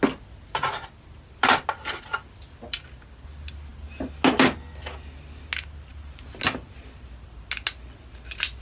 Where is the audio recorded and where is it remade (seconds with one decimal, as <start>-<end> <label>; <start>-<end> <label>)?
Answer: 0.0-8.6 recorded